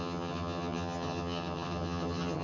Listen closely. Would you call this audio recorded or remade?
remade